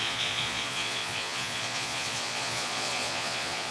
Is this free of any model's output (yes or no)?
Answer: no